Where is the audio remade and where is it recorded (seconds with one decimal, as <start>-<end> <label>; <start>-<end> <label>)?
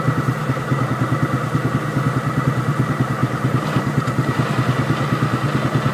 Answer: 0.0-3.2 recorded; 3.2-4.5 remade; 4.5-5.9 recorded